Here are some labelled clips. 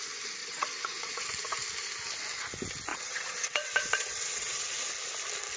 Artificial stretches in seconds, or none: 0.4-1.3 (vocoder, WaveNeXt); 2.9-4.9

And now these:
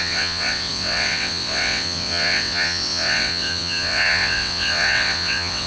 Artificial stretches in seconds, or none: 0.0-5.7 (vocoder, WaveNeXt)

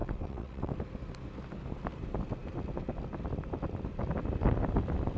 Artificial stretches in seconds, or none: 0.0-0.7 (vocoder, WaveNeXt)

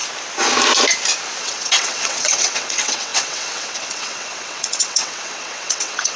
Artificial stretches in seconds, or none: 1.4-6.2 (vocoder, WaveNeXt)

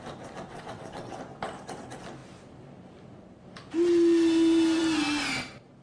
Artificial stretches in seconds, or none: 0.5-1.2 (vocoder, WaveNeXt)

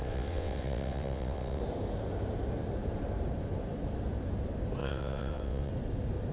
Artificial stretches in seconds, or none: 0.0-1.6 (vocoder, WaveNeXt); 4.8-5.7